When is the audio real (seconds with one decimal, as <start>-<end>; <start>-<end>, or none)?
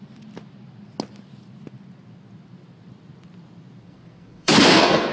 0.0-3.8